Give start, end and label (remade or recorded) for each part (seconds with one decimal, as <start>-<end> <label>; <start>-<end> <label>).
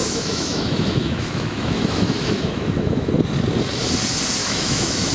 0.0-3.1 remade; 3.1-4.4 recorded; 4.4-5.1 remade